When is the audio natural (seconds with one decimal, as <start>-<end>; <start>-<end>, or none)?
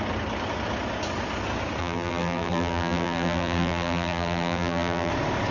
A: 0.0-1.8; 5.1-5.5